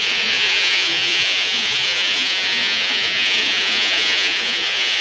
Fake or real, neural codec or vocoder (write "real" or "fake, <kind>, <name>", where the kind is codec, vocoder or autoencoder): fake, vocoder, Vocos